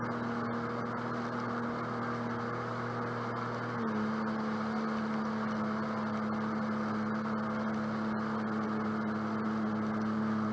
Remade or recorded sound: recorded